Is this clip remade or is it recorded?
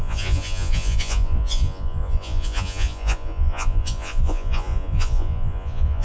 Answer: remade